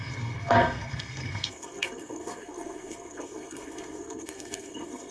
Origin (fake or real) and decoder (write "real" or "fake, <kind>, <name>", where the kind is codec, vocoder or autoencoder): fake, codec, SNAC